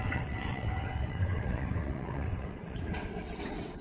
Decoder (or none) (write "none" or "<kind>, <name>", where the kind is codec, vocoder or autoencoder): vocoder, WaveNeXt